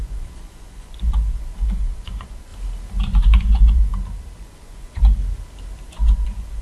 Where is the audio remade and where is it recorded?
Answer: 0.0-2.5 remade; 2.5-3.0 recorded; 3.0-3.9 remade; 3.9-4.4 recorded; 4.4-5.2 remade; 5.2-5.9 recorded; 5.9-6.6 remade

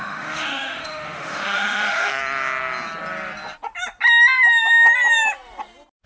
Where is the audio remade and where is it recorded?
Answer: 0.0-2.2 remade; 2.2-6.1 recorded

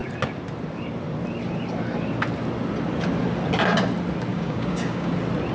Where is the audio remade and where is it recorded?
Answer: 0.0-4.3 recorded; 4.3-5.1 remade; 5.1-5.5 recorded